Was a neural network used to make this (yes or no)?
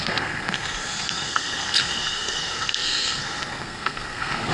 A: yes